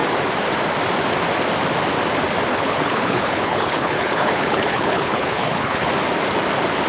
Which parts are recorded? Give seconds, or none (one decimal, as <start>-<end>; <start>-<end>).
0.0-2.5; 5.9-6.9